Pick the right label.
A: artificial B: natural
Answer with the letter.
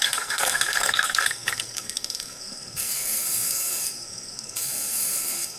A